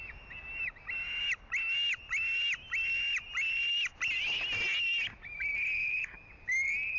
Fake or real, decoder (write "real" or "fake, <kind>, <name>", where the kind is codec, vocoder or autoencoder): real